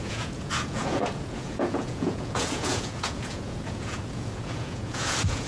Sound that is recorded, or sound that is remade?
remade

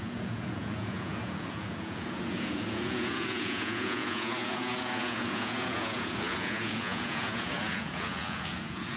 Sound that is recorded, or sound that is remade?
remade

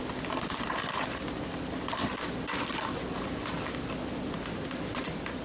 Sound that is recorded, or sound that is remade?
recorded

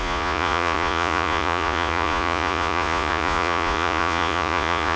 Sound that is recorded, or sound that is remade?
remade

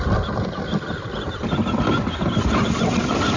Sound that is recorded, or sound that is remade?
recorded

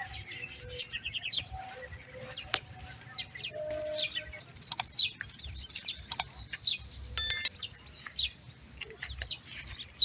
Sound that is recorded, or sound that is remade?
recorded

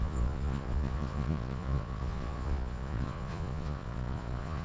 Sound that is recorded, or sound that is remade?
remade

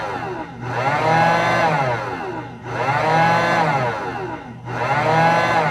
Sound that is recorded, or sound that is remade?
recorded